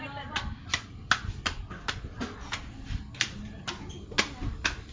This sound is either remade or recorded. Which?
recorded